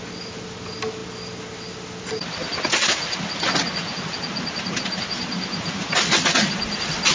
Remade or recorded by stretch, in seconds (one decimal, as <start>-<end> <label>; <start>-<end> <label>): 0.0-7.1 recorded